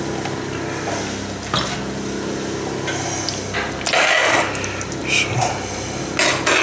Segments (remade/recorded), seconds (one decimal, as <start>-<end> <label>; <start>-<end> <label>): 0.0-6.6 recorded